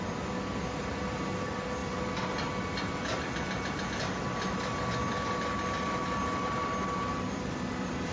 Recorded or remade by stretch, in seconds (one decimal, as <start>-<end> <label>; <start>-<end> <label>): 0.0-8.1 recorded